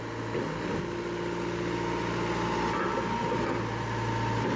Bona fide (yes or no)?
yes